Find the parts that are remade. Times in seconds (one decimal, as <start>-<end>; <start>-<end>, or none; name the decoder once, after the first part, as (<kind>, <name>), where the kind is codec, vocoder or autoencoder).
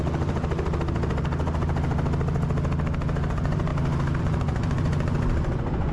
3.3-3.7 (vocoder, Vocos); 4.2-5.9